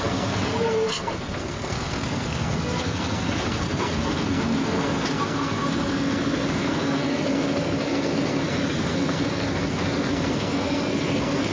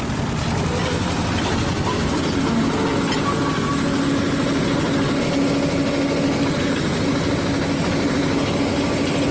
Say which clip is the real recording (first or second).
second